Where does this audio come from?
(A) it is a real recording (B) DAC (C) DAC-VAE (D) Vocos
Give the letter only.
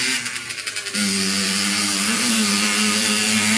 A